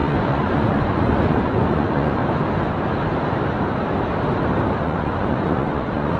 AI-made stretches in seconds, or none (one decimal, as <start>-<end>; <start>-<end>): 0.0-2.2; 4.8-6.2